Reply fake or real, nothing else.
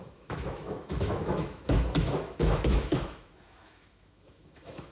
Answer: fake